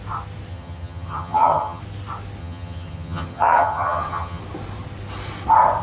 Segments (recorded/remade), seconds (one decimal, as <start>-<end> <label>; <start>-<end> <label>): 0.0-0.5 recorded; 0.5-1.8 remade; 1.8-2.4 recorded; 2.4-4.4 remade; 4.4-5.8 recorded